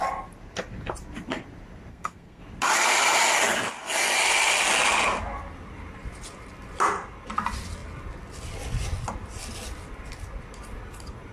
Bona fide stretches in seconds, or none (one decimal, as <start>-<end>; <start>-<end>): 0.0-1.9; 2.4-11.3